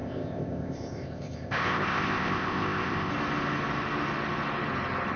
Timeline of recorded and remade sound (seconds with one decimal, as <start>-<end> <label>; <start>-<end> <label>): 0.0-3.1 remade; 3.1-5.2 recorded